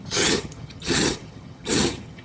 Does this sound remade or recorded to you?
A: remade